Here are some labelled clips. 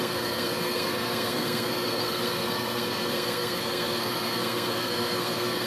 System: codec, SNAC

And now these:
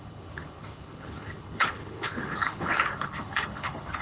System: codec, HILCodec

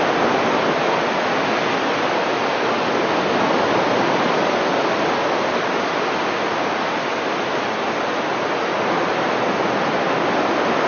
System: none